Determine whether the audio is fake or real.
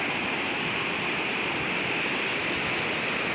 real